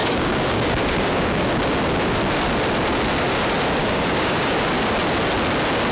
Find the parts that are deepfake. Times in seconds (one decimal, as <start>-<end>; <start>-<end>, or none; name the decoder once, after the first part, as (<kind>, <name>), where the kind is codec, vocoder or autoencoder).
0.0-1.4 (codec, DAC); 3.8-4.7